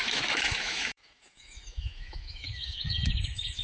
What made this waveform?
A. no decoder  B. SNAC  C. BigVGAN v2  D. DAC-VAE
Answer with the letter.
D